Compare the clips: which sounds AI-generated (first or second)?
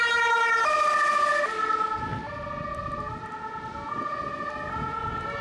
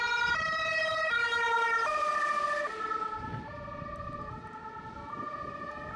second